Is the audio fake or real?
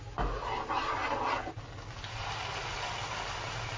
real